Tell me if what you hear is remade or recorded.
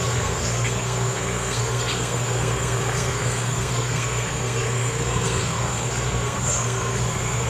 remade